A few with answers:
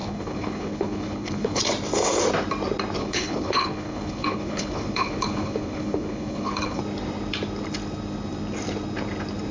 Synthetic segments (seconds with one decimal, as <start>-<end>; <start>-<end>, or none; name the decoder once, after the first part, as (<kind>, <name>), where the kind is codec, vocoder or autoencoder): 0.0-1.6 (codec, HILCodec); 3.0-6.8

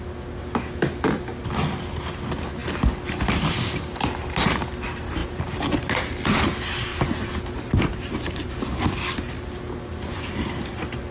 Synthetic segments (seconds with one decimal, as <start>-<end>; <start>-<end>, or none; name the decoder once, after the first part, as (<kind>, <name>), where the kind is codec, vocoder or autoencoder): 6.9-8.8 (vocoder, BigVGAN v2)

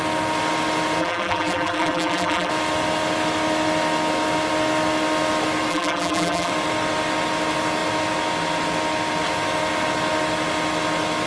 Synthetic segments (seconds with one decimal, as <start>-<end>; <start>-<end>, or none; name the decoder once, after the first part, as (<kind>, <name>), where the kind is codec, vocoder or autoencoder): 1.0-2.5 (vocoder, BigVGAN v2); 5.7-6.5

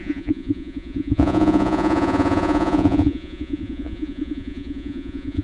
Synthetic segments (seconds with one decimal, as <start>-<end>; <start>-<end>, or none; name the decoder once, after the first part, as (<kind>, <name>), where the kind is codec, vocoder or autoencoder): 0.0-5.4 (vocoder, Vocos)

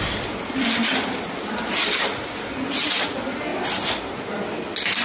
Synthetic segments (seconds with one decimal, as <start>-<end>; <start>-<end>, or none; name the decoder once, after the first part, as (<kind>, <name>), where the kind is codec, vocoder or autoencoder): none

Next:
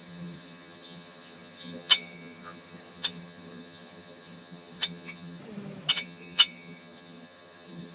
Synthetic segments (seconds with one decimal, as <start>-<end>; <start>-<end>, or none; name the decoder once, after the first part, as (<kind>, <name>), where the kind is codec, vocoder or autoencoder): 0.0-5.4 (vocoder, HiFi-GAN); 5.9-7.9

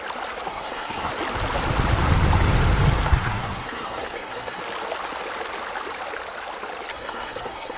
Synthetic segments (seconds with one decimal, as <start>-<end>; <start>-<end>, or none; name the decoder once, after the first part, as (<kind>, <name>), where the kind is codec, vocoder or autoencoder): 0.5-1.1 (codec, SNAC); 3.1-4.6; 6.9-7.8